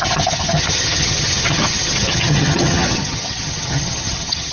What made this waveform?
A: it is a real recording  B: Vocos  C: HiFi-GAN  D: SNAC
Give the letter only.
C